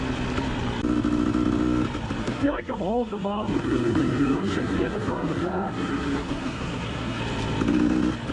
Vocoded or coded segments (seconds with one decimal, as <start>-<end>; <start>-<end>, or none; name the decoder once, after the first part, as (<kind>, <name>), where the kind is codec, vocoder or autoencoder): 2.2-7.2 (codec, SNAC)